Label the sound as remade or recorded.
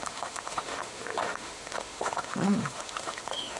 remade